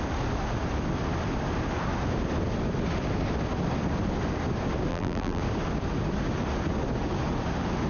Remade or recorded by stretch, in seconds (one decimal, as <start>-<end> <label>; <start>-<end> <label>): 0.0-4.9 recorded; 4.9-5.4 remade; 5.4-7.9 recorded